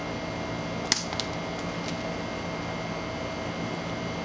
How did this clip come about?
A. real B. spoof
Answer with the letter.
A